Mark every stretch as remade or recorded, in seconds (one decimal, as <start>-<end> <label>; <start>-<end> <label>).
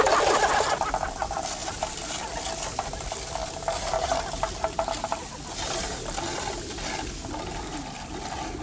0.0-8.6 recorded